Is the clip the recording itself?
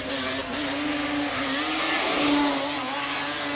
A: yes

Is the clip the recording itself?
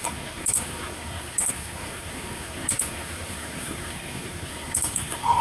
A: no